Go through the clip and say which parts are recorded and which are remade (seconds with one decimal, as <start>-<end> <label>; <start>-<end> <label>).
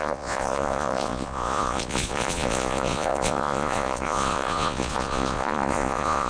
0.0-6.3 remade